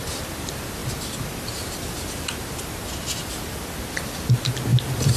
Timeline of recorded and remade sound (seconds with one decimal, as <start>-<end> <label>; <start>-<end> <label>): 0.0-5.2 recorded